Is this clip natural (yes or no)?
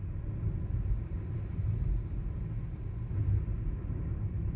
yes